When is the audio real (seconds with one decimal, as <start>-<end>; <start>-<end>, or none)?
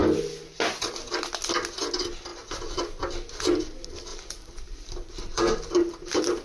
0.0-4.1